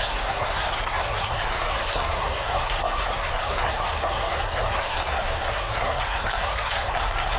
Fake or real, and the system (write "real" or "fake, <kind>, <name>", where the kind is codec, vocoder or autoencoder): fake, codec, SNAC